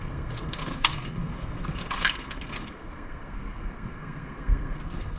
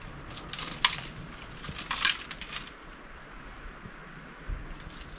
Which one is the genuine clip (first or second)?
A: second